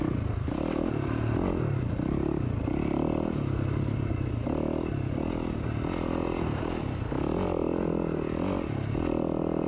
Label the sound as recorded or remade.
recorded